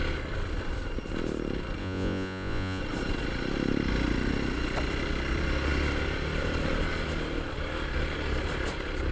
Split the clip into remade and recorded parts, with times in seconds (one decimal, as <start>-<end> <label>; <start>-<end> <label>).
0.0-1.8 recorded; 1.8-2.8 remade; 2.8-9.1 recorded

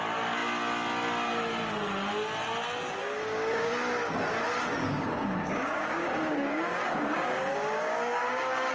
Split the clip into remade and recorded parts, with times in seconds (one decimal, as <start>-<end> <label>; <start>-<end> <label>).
0.0-3.0 recorded; 3.0-3.7 remade; 3.7-4.8 recorded; 4.8-8.7 remade

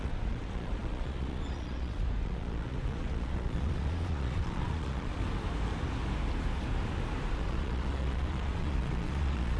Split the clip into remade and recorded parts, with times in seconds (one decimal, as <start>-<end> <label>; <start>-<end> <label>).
0.0-5.2 remade; 5.2-7.3 recorded; 7.3-9.6 remade

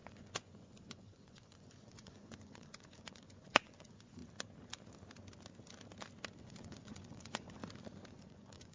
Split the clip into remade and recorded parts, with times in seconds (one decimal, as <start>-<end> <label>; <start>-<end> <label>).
0.0-4.2 remade; 4.2-6.4 recorded; 6.4-7.6 remade; 7.6-8.1 recorded; 8.1-8.7 remade

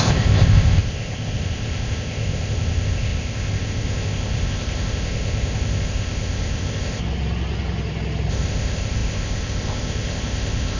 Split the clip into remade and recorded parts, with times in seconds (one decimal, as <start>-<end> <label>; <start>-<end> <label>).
0.0-7.0 remade; 7.0-8.3 recorded; 8.3-10.8 remade

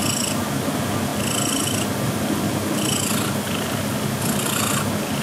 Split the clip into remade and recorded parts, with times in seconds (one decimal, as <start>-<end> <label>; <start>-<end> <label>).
0.0-5.2 recorded